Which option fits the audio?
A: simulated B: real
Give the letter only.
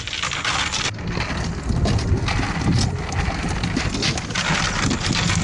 B